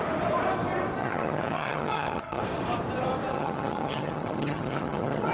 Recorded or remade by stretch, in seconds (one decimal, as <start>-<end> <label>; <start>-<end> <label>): 0.0-1.0 recorded; 1.0-2.4 remade; 2.4-3.3 recorded; 3.3-5.3 remade